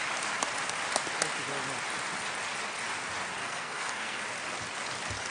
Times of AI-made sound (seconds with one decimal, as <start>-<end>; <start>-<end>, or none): 3.4-4.2